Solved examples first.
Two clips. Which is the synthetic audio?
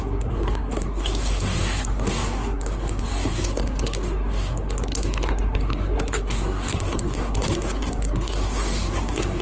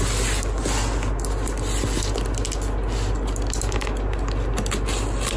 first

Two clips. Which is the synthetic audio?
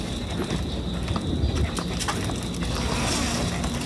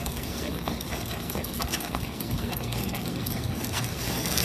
second